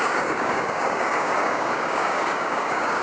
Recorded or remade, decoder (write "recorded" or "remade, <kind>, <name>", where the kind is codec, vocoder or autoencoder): remade, codec, DAC